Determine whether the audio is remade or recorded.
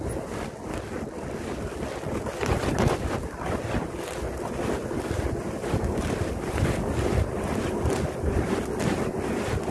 recorded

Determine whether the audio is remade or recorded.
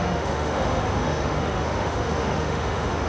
remade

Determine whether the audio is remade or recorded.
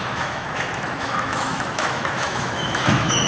remade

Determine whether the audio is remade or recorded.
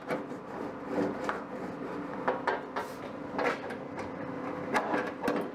recorded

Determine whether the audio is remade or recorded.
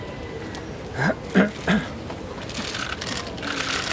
recorded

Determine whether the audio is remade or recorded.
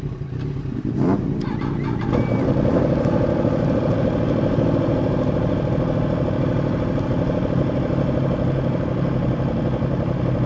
recorded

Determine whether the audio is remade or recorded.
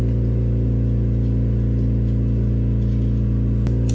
recorded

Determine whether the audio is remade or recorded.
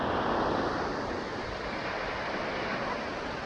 recorded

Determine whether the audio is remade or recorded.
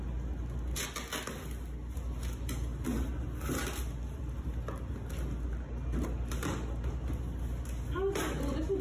recorded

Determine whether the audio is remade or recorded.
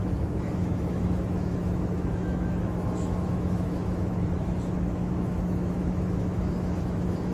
remade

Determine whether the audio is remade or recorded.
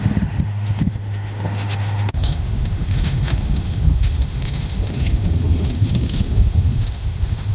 remade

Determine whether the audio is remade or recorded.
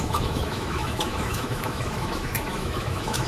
remade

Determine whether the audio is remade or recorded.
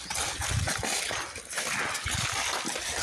recorded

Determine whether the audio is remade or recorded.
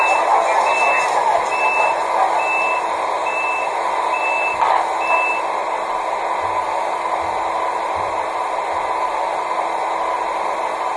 recorded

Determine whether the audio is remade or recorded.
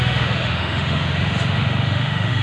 remade